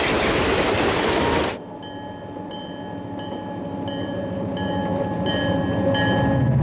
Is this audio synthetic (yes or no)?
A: no